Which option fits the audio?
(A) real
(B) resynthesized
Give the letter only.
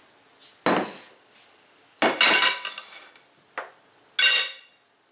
A